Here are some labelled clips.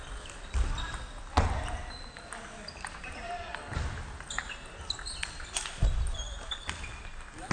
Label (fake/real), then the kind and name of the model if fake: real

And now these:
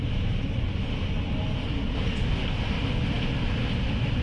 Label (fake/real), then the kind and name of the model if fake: real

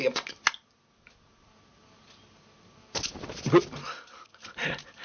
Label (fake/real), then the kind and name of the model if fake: real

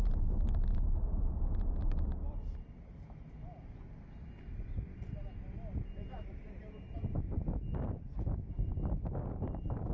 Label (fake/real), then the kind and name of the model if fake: real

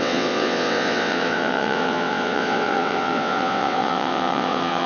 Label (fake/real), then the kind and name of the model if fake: fake, vocoder, WaveNeXt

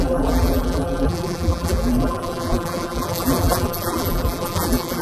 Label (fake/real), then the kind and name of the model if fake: fake, vocoder, BigVGAN v2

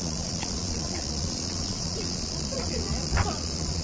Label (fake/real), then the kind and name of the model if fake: fake, vocoder, Vocos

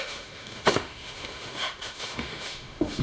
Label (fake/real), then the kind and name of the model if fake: fake, autoencoder, DAC-VAE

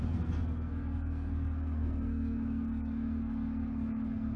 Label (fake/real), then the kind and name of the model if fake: fake, codec, SNAC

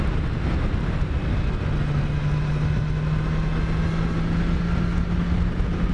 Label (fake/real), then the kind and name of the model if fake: real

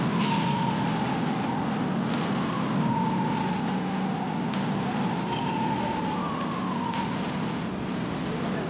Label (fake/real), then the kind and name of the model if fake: real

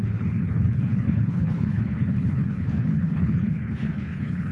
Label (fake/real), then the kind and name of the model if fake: fake, codec, HILCodec